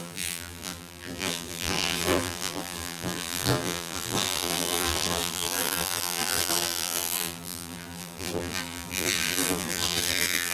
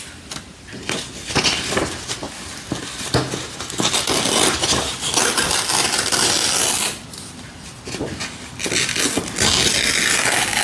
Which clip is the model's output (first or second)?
first